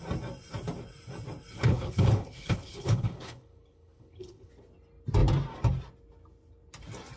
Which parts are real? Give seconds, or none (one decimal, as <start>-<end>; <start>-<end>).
0.0-1.6; 4.5-7.2